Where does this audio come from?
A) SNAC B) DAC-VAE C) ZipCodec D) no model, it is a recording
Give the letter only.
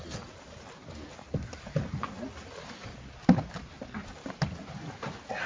D